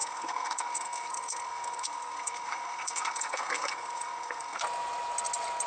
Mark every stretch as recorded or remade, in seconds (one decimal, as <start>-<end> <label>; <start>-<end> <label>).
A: 0.0-4.6 remade; 4.6-5.7 recorded